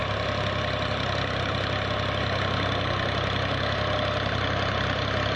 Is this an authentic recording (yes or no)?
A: yes